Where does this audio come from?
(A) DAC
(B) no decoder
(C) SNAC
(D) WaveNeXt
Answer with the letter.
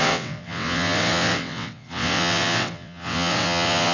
D